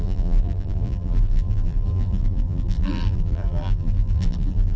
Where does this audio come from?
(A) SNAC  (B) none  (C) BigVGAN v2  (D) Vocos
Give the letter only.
C